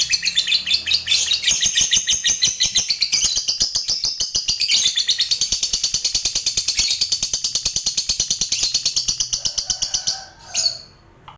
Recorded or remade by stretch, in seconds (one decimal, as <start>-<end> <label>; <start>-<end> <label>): 0.0-11.4 recorded